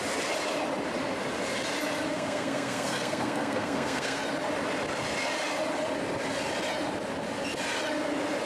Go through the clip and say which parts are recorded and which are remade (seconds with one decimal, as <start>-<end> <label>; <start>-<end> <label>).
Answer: 0.0-2.1 recorded; 2.1-4.2 remade; 4.2-8.5 recorded